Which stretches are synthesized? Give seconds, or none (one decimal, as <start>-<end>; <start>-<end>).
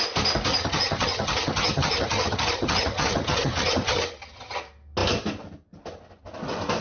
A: 0.5-4.6